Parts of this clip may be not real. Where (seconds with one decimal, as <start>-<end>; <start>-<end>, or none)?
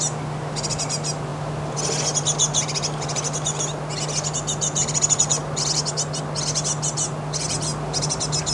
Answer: none